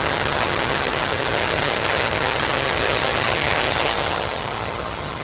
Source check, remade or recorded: remade